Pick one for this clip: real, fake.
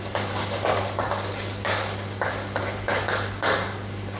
fake